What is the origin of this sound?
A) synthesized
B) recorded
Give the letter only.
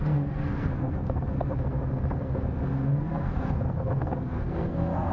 A